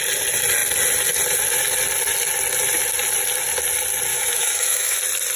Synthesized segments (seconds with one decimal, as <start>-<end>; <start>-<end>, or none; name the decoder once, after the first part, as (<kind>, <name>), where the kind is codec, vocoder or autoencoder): 4.1-5.0 (autoencoder, DAC-VAE)